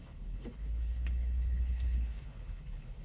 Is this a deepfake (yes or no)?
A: yes